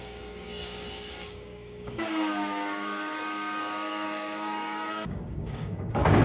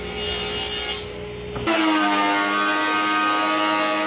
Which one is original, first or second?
second